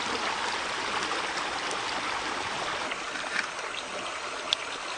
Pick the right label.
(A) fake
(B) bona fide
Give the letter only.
B